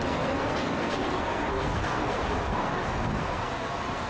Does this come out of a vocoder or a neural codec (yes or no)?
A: yes